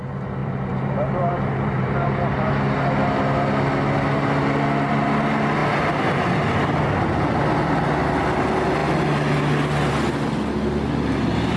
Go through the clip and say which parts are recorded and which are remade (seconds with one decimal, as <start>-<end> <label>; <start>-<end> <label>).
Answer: 0.0-0.4 recorded; 0.4-2.5 remade; 2.5-11.6 recorded